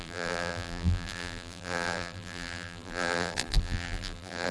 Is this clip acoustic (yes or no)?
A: no